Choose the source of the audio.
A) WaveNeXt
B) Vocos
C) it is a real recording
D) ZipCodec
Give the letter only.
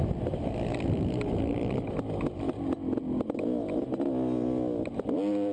C